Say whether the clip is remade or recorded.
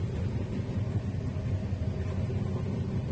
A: recorded